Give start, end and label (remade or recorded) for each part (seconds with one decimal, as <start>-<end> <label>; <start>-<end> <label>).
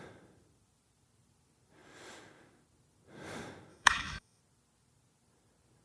0.0-3.7 recorded; 3.7-4.4 remade; 4.4-5.8 recorded